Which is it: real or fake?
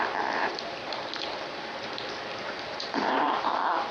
fake